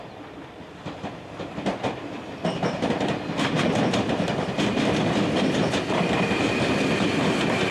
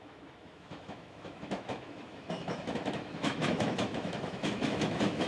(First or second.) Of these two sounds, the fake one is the second